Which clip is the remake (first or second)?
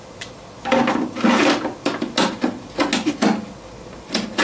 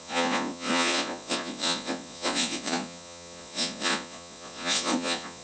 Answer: second